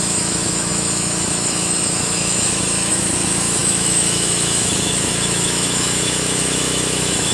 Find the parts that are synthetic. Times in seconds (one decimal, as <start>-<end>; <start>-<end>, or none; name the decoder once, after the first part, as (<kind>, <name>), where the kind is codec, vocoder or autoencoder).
0.0-7.3 (autoencoder, DAC-VAE)